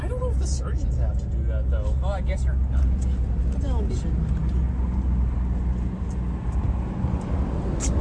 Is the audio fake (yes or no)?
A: no